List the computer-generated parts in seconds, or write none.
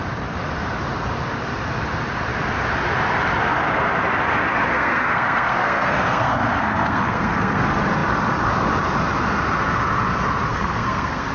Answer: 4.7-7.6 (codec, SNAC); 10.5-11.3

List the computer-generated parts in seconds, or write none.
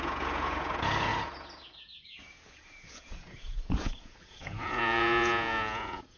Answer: 0.0-6.2 (vocoder, Vocos)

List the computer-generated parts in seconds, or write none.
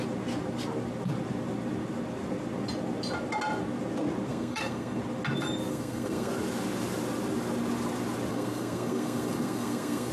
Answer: 4.3-5.0 (codec, SNAC); 5.7-6.3; 8.3-10.1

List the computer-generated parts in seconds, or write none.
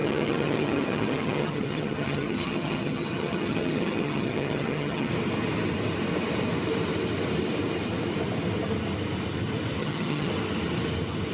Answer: 0.0-5.1 (vocoder, HiFi-GAN); 9.8-10.3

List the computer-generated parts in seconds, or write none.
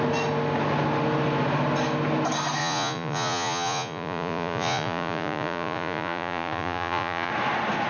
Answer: 2.6-7.3 (vocoder, Vocos)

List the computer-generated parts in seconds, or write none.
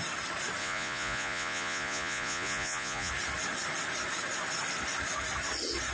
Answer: 0.6-3.1 (vocoder, Vocos)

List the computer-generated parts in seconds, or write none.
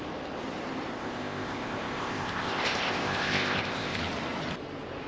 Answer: 0.9-4.0 (codec, ZipCodec)